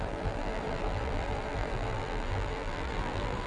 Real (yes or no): no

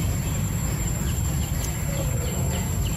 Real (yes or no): no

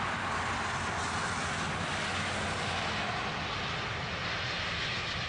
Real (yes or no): yes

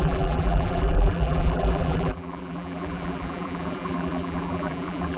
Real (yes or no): no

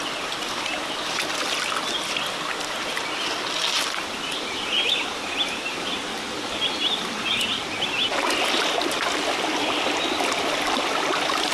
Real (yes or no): yes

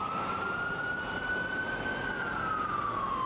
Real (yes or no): yes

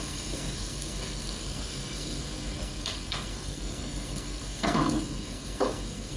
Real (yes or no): no